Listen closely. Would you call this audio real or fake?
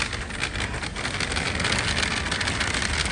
real